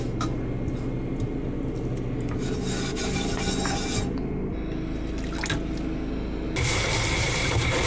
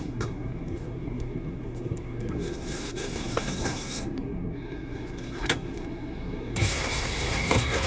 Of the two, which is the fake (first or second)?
second